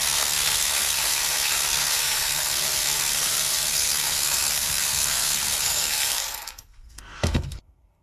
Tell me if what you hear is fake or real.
fake